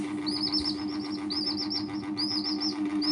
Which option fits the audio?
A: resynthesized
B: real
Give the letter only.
B